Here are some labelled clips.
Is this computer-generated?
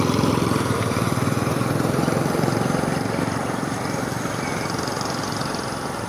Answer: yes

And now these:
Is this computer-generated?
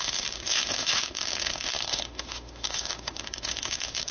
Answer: yes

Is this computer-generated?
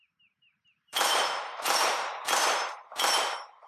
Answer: yes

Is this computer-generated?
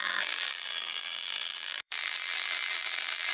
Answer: yes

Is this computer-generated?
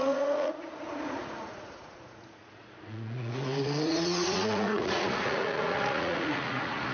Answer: yes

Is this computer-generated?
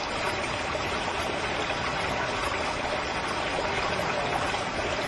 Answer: yes